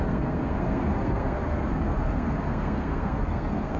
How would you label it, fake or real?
fake